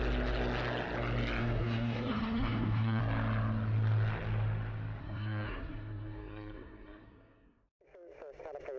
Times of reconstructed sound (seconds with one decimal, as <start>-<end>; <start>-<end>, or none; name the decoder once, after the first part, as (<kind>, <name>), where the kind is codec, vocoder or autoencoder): 1.4-3.0 (codec, SNAC); 5.0-7.8